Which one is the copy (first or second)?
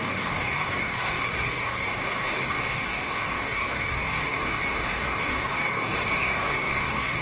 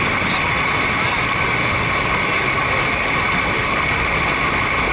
first